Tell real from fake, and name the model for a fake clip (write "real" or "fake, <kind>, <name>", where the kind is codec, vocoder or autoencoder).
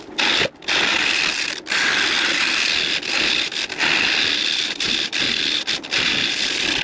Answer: real